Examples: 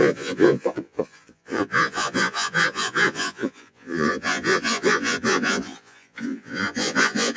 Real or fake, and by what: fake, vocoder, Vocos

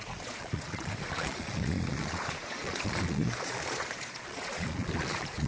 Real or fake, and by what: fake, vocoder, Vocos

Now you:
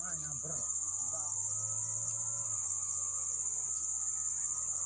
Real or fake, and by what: real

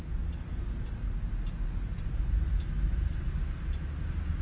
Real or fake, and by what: real